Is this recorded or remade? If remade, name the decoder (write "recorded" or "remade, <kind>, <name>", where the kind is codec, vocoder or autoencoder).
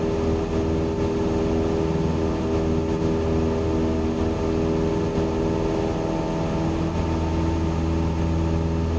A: recorded